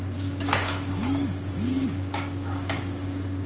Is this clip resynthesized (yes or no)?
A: yes